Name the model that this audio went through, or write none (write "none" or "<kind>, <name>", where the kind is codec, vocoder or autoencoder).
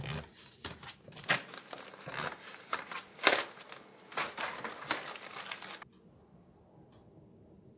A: none